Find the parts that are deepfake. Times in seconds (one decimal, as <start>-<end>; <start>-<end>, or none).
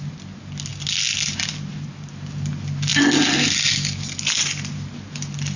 none